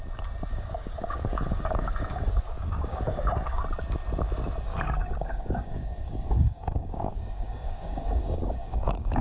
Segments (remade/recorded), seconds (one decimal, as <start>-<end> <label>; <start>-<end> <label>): 0.0-0.5 recorded; 0.5-3.6 remade; 3.6-4.7 recorded; 4.7-9.2 remade